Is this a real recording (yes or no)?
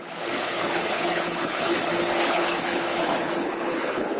no